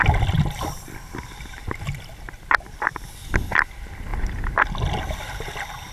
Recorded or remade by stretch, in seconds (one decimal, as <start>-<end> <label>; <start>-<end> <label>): 0.0-5.9 recorded